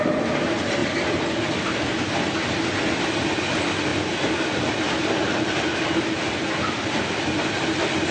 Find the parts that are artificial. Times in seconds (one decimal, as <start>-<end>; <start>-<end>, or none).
none